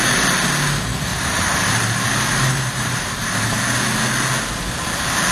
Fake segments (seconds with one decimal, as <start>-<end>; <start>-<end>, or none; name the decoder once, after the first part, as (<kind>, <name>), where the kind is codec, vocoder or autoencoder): 1.1-3.6 (vocoder, BigVGAN v2)